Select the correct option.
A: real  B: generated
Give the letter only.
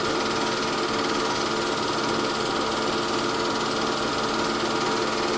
A